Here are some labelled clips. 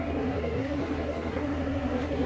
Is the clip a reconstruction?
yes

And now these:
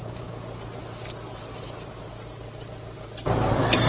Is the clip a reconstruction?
no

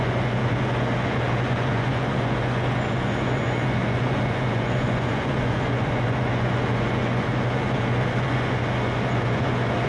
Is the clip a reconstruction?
yes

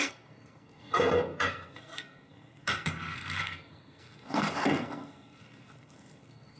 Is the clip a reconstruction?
yes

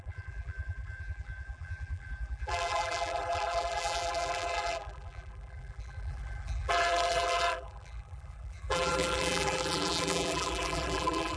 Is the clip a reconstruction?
yes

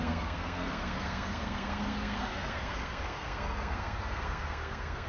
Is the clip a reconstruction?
yes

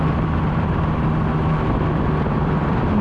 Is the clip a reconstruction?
no